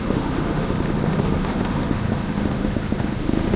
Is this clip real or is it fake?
fake